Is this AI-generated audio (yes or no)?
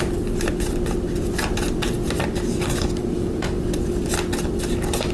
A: no